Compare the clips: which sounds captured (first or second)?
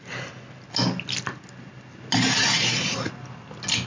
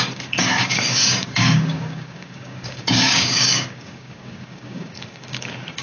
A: first